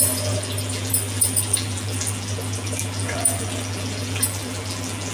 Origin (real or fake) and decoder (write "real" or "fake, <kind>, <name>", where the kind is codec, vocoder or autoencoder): fake, vocoder, BigVGAN v2